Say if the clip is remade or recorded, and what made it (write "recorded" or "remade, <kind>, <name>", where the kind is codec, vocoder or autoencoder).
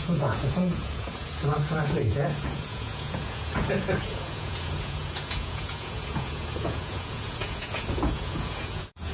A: remade, vocoder, Vocos